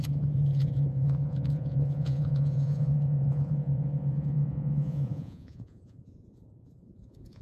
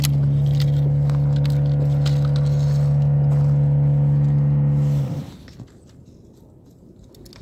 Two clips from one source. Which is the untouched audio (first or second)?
second